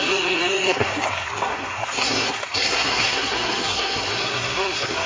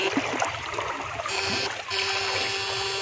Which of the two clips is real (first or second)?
second